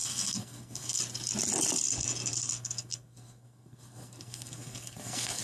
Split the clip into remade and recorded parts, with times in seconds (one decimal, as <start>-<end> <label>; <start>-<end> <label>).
0.0-1.0 remade; 1.0-2.3 recorded; 2.3-5.4 remade